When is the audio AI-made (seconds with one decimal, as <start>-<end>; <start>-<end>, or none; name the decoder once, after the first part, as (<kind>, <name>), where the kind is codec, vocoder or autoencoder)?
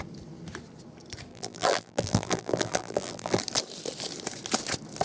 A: 1.3-3.4 (vocoder, BigVGAN v2)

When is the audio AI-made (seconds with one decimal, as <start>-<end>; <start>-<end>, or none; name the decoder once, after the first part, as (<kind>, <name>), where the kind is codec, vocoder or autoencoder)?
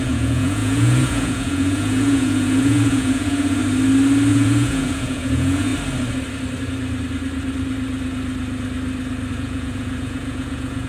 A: 0.0-3.6 (vocoder, Vocos); 4.3-5.7; 9.3-10.9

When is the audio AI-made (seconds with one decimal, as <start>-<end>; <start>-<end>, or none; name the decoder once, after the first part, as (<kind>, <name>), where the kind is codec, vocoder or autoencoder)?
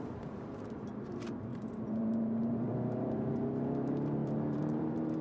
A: 0.0-5.2 (vocoder, BigVGAN v2)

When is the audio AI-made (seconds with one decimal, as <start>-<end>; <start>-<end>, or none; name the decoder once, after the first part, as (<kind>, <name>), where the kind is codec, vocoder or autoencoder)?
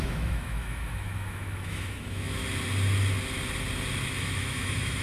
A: 0.0-2.4 (autoencoder, DAC-VAE); 4.2-5.0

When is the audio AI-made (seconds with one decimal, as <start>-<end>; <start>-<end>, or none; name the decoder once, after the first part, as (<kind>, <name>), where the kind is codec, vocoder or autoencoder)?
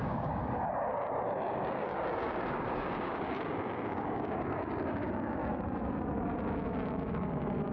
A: 0.0-0.4 (codec, DAC); 1.5-1.9; 2.5-5.4; 6.7-7.7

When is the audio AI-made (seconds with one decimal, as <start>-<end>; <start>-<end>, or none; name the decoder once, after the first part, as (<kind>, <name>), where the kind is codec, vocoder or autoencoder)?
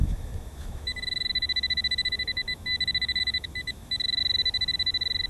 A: 0.0-4.2 (autoencoder, DAC-VAE)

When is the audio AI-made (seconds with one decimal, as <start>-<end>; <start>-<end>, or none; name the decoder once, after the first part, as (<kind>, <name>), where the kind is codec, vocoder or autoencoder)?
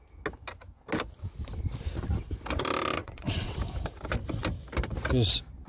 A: 3.0-3.6 (vocoder, WaveNeXt)